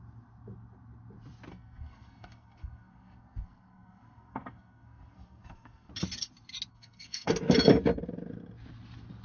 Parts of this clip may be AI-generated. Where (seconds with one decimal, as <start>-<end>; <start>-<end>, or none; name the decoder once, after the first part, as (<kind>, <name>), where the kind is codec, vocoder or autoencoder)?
1.5-5.9 (codec, SNAC); 6.7-7.3